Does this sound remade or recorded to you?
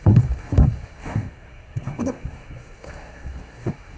remade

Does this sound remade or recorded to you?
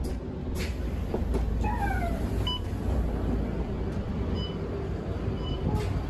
recorded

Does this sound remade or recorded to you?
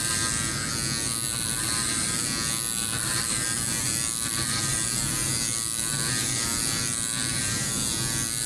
recorded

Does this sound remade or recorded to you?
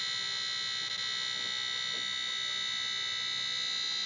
recorded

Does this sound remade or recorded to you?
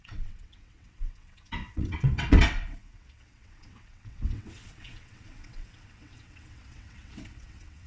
remade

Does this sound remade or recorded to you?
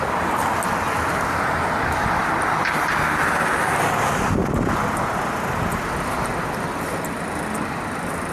recorded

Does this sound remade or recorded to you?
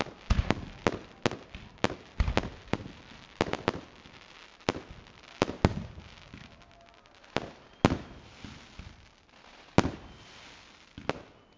recorded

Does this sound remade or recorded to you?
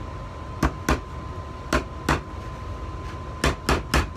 recorded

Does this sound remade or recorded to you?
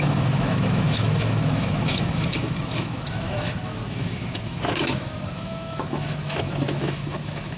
remade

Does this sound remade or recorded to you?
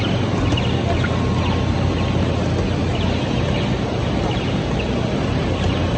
recorded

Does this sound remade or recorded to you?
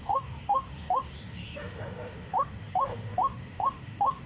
remade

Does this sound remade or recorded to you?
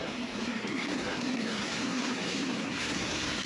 remade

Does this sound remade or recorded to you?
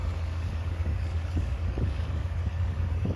remade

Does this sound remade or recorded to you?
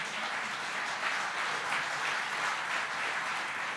recorded